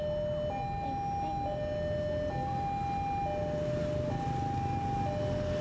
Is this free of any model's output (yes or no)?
yes